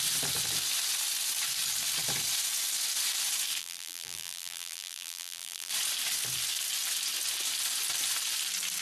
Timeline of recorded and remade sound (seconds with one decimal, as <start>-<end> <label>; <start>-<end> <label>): 0.0-3.6 recorded; 3.6-5.7 remade; 5.7-8.8 recorded